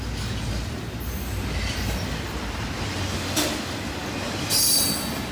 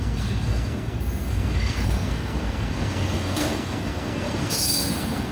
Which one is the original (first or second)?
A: first